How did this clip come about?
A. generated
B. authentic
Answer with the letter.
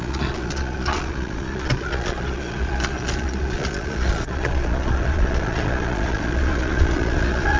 A